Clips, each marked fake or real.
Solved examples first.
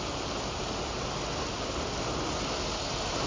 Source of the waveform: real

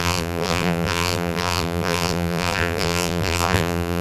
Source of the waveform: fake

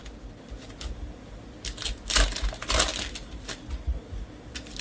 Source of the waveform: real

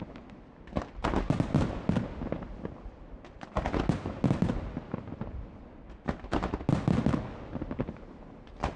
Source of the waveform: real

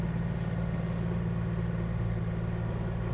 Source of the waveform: real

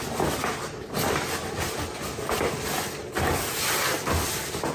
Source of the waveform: real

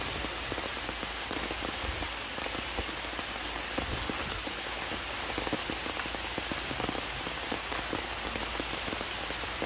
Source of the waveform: real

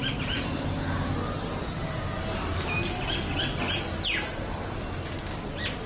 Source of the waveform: real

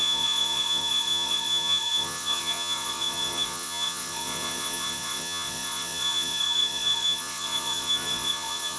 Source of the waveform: fake